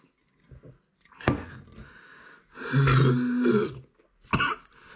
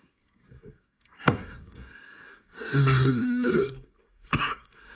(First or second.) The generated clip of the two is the second